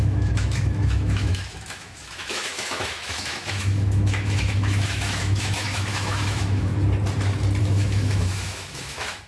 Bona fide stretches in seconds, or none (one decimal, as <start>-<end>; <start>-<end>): 6.7-7.6